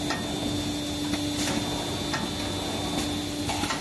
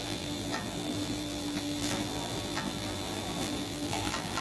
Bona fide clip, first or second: first